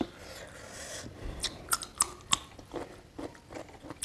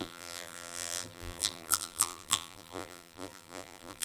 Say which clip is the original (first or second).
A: first